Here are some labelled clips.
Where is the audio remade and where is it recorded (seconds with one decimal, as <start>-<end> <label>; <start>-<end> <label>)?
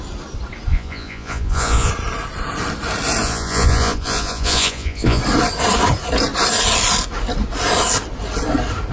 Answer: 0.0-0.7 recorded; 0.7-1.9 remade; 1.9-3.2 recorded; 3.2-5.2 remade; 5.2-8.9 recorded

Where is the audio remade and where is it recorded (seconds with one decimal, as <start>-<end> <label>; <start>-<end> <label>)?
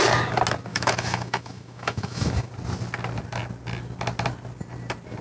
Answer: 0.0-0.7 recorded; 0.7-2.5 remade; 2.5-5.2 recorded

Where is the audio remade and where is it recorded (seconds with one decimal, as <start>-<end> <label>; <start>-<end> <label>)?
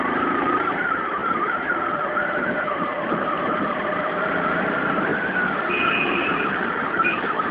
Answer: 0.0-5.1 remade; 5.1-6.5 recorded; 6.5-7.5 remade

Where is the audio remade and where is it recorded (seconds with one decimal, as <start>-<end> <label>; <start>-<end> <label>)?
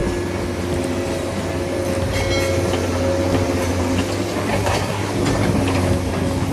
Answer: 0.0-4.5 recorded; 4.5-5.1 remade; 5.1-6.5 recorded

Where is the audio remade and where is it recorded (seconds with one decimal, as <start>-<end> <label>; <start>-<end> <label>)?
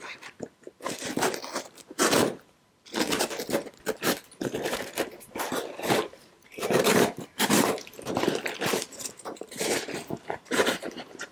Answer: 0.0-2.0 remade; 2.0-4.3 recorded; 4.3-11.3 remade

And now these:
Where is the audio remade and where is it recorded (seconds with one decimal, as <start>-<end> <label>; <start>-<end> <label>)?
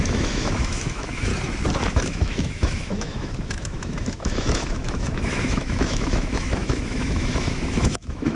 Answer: 0.0-1.3 remade; 1.3-1.9 recorded; 1.9-8.3 remade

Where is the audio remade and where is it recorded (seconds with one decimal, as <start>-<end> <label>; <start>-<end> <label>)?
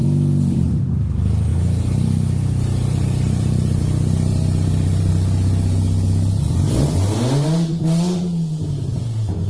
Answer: 0.0-0.7 remade; 0.7-1.5 recorded; 1.5-3.8 remade; 3.8-4.3 recorded; 4.3-5.1 remade; 5.1-9.5 recorded